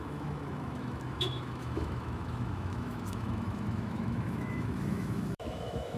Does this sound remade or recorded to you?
remade